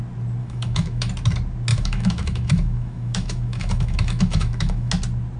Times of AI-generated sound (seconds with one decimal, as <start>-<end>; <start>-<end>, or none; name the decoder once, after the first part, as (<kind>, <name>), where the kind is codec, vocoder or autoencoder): 0.4-1.1 (autoencoder, DAC-VAE); 1.7-4.9